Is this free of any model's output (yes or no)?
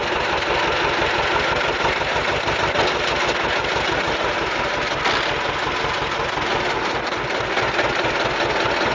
yes